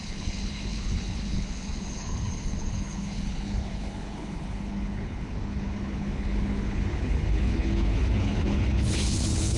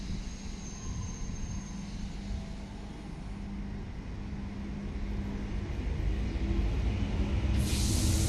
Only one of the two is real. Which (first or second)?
second